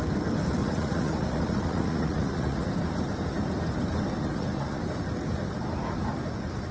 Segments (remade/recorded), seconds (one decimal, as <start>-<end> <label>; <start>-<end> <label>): 0.0-0.6 recorded; 0.6-2.7 remade; 2.7-4.2 recorded; 4.2-4.8 remade; 4.8-6.7 recorded